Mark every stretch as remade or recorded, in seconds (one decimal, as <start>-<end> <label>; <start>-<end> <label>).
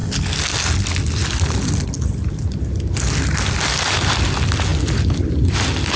0.0-6.0 recorded